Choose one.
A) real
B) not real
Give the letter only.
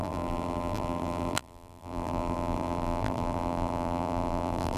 B